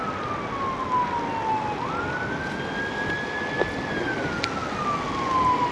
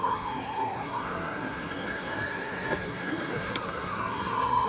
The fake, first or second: second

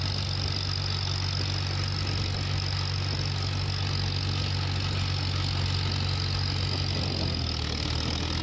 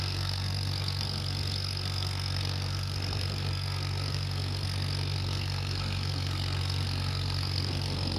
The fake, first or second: second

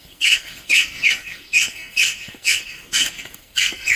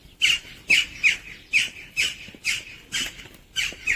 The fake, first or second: first